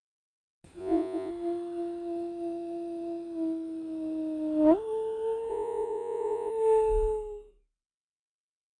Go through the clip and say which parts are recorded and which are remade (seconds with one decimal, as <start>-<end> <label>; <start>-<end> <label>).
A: 0.0-0.8 recorded; 0.8-1.3 remade; 1.3-5.5 recorded; 5.5-6.5 remade; 6.5-8.8 recorded